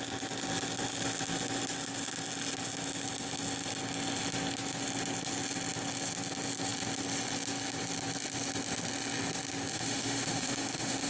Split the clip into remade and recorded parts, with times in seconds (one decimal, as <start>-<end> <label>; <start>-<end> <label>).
0.0-9.7 recorded; 9.7-11.1 remade